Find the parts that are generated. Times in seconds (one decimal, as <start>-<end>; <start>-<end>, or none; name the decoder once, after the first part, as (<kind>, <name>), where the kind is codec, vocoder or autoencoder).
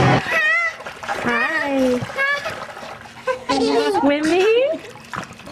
3.4-3.9 (codec, SNAC)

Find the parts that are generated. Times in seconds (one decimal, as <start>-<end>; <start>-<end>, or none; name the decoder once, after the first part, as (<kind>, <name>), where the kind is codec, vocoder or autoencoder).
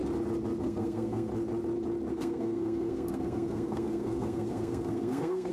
0.6-1.3 (codec, SNAC); 2.1-5.5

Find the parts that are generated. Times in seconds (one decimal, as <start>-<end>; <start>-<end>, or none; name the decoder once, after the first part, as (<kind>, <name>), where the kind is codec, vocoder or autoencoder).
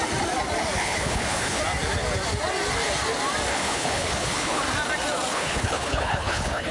0.8-1.6 (codec, HILCodec); 3.5-4.6; 5.3-6.7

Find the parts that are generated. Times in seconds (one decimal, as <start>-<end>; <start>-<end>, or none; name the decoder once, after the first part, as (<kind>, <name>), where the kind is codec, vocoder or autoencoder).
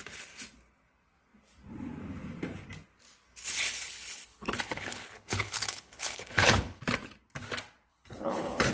3.4-6.8 (codec, HILCodec); 7.9-8.7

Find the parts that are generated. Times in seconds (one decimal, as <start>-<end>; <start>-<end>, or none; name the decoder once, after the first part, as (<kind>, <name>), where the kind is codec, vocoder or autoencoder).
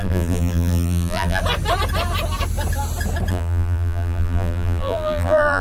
0.0-1.4 (vocoder, BigVGAN v2); 3.3-5.6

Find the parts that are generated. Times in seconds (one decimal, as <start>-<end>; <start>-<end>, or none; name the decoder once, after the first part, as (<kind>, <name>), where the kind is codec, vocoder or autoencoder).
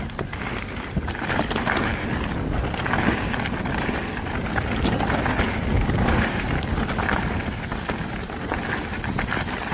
none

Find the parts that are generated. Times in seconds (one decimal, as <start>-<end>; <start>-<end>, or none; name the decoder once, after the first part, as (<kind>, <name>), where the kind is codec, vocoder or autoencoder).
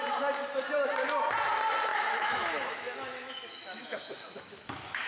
1.9-5.1 (autoencoder, DAC-VAE)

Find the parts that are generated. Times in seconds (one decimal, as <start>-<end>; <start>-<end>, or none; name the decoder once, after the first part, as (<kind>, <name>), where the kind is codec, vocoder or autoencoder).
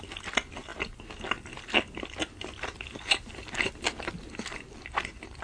none